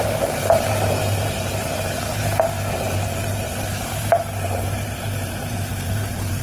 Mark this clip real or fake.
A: fake